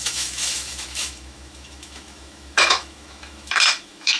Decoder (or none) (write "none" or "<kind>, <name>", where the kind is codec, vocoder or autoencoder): autoencoder, DAC-VAE